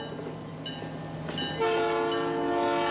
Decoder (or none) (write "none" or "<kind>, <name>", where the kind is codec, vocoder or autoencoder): none